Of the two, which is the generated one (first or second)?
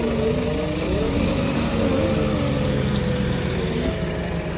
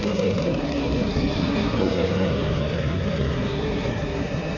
second